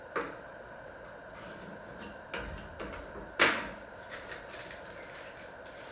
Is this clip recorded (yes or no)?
yes